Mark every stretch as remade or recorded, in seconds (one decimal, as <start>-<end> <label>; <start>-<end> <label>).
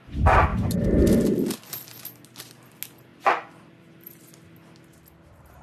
0.0-3.1 recorded; 3.1-4.2 remade; 4.2-5.6 recorded